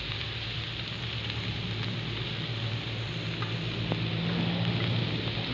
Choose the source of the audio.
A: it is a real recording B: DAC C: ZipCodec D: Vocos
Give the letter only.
A